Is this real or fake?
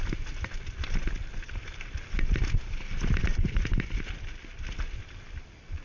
real